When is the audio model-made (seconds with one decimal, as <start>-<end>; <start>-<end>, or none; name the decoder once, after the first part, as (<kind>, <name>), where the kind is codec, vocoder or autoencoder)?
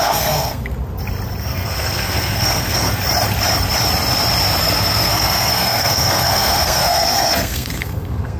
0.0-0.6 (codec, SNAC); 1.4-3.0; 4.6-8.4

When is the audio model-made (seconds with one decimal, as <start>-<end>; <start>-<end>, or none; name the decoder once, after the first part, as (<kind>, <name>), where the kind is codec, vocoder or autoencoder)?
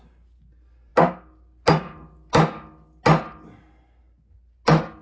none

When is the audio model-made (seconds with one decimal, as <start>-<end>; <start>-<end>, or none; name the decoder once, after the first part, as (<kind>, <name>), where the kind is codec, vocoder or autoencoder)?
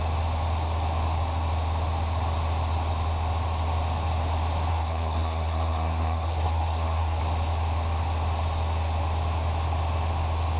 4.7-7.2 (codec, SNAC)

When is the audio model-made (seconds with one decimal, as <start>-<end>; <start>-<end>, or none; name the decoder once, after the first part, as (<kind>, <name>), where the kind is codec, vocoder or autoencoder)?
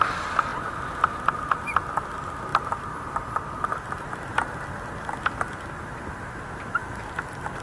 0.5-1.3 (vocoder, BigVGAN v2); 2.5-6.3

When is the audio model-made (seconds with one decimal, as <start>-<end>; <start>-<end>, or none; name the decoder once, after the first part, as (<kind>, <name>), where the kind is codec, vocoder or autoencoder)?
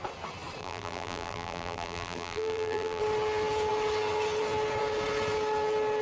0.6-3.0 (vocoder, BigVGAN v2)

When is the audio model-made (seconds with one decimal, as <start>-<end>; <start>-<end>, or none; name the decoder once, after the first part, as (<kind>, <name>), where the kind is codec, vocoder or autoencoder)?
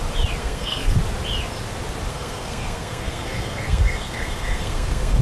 0.4-1.0 (codec, SNAC); 2.1-5.2